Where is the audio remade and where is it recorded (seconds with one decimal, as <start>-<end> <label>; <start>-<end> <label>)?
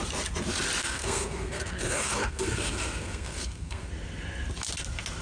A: 0.0-0.8 recorded; 0.8-3.9 remade; 3.9-5.2 recorded